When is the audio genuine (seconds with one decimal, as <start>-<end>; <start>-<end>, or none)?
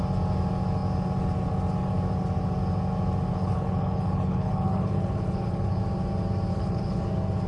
0.0-3.3; 5.8-6.5; 7.0-7.5